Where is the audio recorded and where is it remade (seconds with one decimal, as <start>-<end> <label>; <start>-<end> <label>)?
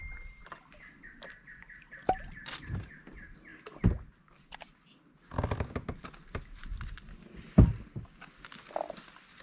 0.0-2.2 remade; 2.2-9.4 recorded